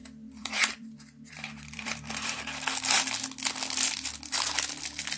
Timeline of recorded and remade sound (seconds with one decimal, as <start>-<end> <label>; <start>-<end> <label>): 0.0-2.4 remade; 2.4-5.2 recorded